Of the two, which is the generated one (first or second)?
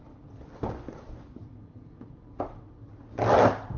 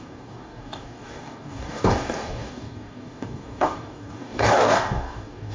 second